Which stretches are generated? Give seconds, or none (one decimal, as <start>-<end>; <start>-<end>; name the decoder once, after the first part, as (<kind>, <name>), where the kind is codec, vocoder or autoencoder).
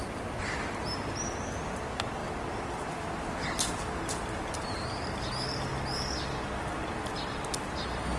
none